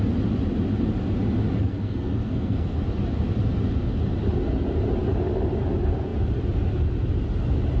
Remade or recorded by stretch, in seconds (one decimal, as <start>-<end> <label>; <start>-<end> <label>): 0.0-1.6 recorded; 1.6-2.8 remade; 2.8-7.8 recorded